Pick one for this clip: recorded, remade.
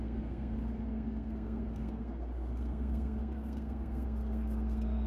remade